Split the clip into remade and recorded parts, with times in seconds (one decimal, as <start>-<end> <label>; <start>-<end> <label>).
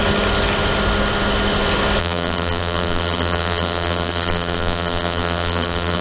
0.0-2.0 recorded; 2.0-6.0 remade